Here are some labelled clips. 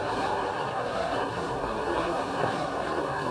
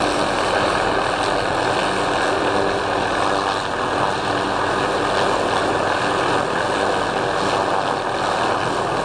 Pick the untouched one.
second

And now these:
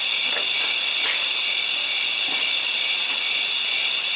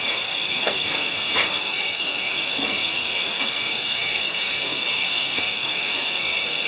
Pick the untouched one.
first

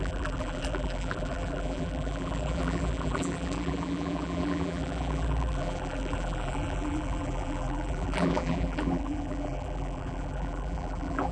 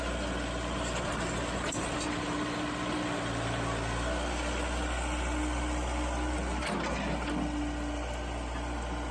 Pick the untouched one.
second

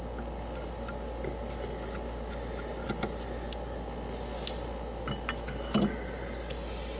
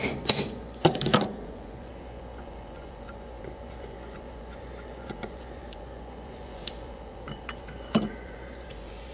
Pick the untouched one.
first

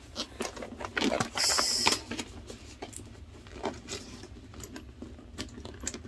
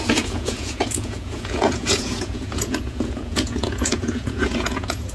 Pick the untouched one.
first